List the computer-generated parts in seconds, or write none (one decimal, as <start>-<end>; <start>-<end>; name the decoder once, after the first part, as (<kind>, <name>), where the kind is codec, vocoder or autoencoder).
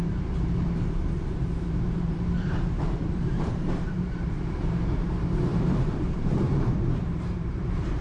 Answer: 0.0-8.0 (vocoder, BigVGAN v2)